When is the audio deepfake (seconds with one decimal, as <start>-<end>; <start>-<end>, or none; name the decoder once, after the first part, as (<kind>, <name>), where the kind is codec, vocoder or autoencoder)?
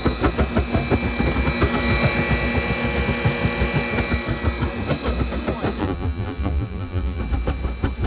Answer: 5.8-7.2 (vocoder, BigVGAN v2)